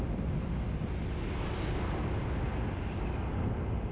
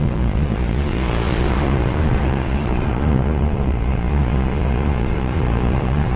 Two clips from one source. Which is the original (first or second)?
first